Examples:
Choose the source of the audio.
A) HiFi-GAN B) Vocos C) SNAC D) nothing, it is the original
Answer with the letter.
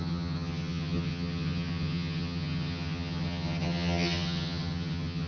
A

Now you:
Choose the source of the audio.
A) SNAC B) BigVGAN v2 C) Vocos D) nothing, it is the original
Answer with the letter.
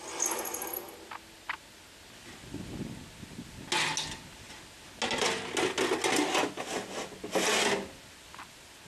D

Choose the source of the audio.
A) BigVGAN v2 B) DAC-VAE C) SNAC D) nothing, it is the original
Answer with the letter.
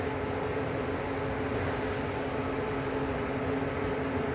D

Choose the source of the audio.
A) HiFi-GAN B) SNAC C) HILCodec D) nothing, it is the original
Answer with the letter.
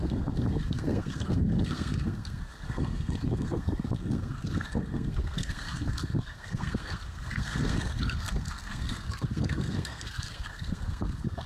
B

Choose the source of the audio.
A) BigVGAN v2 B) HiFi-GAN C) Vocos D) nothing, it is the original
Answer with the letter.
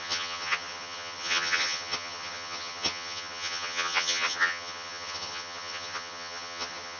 B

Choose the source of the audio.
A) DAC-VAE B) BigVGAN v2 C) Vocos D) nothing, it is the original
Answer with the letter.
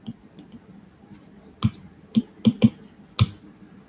D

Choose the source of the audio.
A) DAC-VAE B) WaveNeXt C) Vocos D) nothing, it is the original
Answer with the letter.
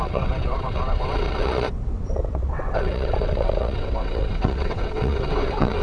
B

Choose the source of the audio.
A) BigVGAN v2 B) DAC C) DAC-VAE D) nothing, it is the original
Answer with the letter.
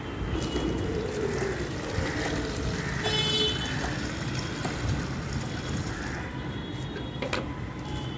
D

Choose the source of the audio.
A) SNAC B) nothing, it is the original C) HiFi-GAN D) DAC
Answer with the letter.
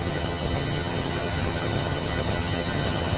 C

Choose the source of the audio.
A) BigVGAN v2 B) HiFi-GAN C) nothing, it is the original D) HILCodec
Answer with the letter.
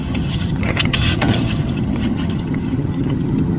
B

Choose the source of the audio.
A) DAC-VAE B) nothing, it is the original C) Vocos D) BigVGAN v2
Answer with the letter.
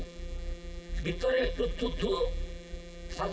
D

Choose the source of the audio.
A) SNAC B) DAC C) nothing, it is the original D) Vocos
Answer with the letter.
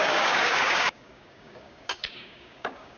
B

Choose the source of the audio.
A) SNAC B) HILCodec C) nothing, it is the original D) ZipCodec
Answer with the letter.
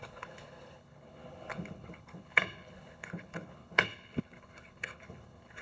B